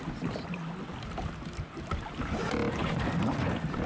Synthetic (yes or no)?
no